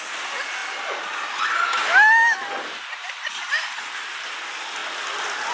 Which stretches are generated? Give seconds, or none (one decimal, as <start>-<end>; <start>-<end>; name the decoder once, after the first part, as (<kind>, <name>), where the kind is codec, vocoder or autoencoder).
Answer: none